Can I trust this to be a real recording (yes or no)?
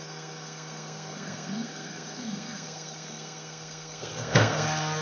no